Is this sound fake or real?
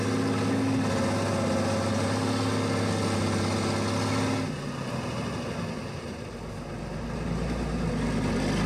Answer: real